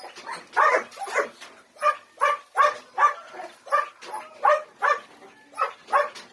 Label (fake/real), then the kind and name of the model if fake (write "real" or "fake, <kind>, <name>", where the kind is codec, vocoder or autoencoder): real